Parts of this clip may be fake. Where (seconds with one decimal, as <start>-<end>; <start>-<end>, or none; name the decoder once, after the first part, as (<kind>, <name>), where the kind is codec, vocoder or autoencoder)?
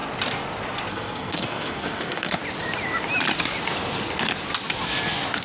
0.9-2.4 (codec, SNAC)